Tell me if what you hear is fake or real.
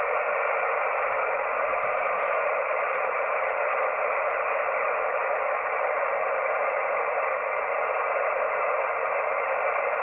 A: real